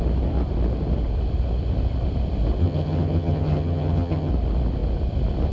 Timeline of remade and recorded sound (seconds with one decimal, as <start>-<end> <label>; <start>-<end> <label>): 0.0-2.6 recorded; 2.6-4.3 remade; 4.3-5.5 recorded